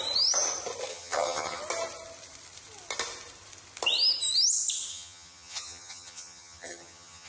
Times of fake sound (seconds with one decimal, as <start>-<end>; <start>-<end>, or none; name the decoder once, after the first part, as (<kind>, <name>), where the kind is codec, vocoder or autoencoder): 0.9-1.6 (vocoder, HiFi-GAN); 4.9-7.3